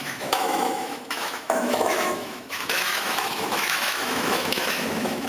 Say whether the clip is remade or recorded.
remade